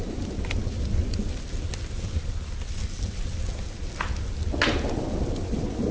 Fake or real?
real